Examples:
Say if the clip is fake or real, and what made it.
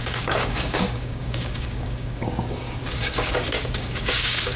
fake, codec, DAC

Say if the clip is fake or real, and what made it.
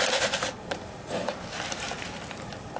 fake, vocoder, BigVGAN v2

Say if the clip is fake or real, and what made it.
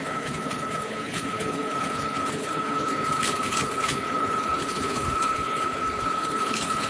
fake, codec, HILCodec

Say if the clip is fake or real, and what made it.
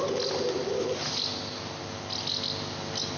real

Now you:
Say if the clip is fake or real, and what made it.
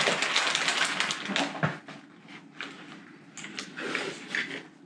real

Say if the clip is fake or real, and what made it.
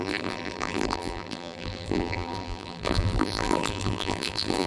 fake, vocoder, BigVGAN v2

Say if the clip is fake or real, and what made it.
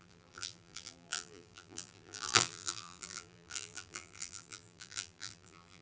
fake, vocoder, BigVGAN v2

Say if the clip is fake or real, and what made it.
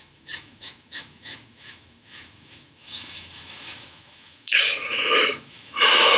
fake, autoencoder, DAC-VAE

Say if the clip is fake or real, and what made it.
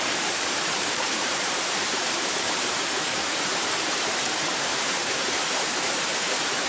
fake, vocoder, BigVGAN v2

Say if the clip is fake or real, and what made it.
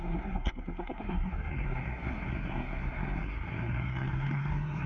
fake, codec, SNAC